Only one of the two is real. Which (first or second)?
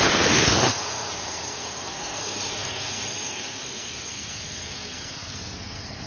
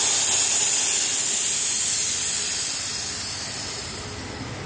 second